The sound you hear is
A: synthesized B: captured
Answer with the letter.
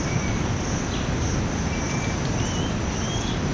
B